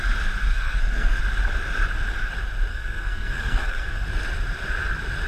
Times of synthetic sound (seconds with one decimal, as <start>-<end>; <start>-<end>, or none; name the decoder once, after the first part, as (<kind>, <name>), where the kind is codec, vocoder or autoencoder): 0.5-1.2 (codec, SNAC); 2.7-4.0